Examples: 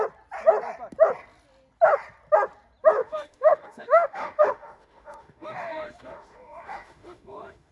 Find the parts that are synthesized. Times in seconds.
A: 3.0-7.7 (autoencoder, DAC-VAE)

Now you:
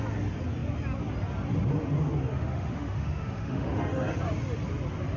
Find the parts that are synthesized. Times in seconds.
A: 2.3-4.2 (autoencoder, DAC-VAE)

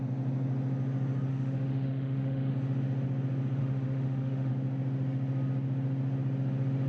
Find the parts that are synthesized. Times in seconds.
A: 1.3-2.5 (autoencoder, DAC-VAE); 3.6-4.5

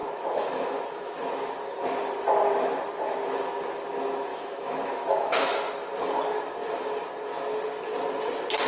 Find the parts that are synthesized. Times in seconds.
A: 0.0-1.2 (autoencoder, DAC-VAE); 4.3-5.7

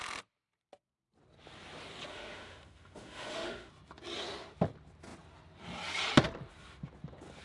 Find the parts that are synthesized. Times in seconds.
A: 2.1-3.7 (autoencoder, DAC-VAE)

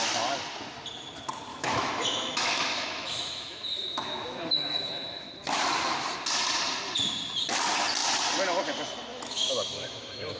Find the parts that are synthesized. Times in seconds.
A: 1.5-5.3 (autoencoder, DAC-VAE); 9.1-10.4

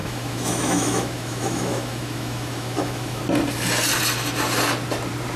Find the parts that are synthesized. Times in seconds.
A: 0.0-3.2 (autoencoder, DAC-VAE)